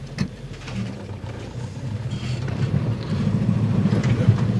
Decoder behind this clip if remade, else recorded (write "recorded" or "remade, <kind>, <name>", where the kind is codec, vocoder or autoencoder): remade, vocoder, BigVGAN v2